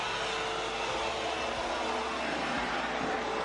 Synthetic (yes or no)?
no